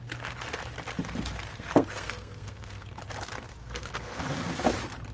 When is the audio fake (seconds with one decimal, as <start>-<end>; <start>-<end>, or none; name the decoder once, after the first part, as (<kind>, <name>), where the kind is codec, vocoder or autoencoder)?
1.5-3.0 (codec, SNAC); 3.6-4.2